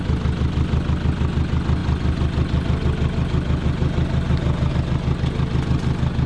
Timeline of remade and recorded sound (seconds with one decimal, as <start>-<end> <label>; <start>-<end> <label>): 0.0-6.3 recorded